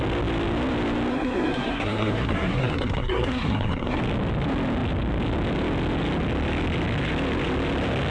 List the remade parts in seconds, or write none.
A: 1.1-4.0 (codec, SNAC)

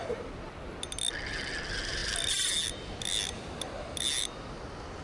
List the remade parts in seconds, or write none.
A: none

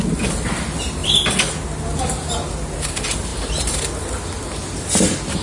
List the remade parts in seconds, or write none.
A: none

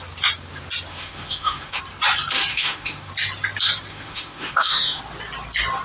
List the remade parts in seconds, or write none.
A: 0.9-1.8 (autoencoder, DAC-VAE); 2.5-3.1; 3.9-5.0

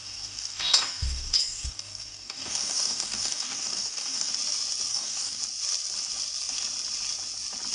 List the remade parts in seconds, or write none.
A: 0.0-4.3 (codec, DAC); 4.9-5.4